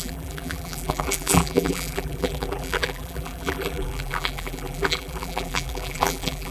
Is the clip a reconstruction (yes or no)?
yes